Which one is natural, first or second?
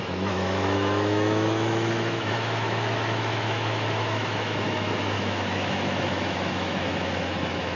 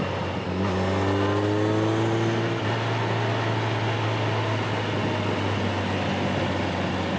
second